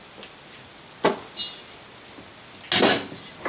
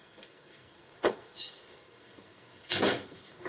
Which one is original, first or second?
first